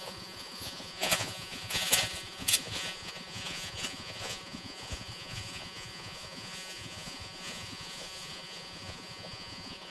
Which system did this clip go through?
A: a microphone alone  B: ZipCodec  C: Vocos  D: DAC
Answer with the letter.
C